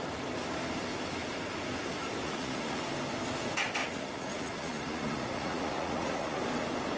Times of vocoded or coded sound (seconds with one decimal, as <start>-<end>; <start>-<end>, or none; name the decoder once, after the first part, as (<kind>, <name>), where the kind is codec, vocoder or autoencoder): 2.2-2.8 (vocoder, Vocos); 3.8-6.4